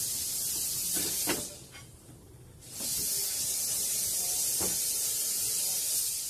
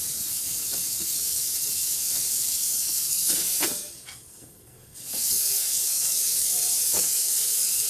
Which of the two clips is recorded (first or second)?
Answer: first